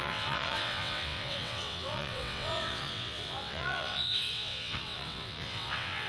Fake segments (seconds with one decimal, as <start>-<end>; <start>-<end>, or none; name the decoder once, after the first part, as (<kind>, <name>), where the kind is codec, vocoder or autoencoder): 0.0-6.1 (vocoder, WaveNeXt)